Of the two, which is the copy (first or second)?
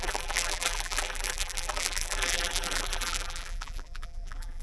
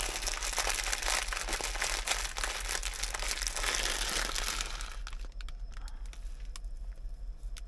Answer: first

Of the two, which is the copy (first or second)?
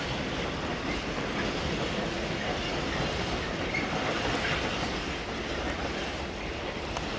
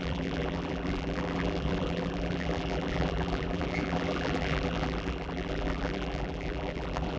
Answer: second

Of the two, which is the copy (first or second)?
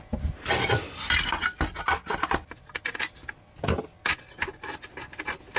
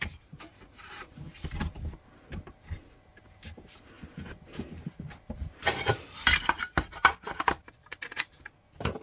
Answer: second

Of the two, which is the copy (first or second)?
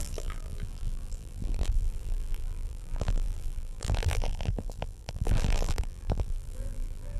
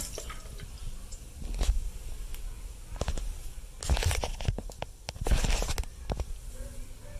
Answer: first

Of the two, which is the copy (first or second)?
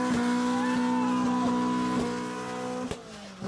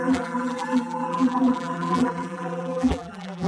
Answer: second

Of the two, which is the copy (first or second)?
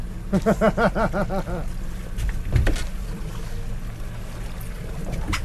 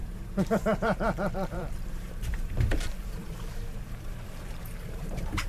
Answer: second